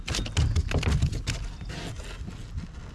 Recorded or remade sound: recorded